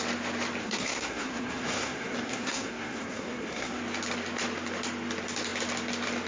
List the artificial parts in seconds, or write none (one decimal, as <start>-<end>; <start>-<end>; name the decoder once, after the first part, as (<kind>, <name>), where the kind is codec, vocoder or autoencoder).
0.6-3.8 (codec, SNAC)